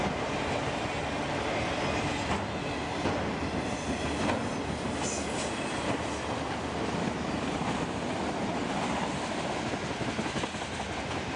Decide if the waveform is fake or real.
real